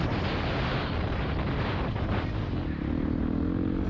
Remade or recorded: recorded